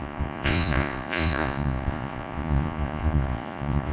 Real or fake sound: fake